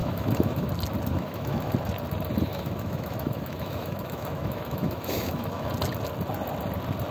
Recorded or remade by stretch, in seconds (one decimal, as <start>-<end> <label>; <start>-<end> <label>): 0.0-0.7 remade; 0.7-1.1 recorded; 1.1-1.7 remade; 1.7-2.5 recorded; 2.5-5.7 remade; 5.7-7.1 recorded